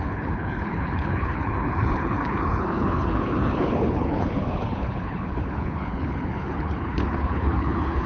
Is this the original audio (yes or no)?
no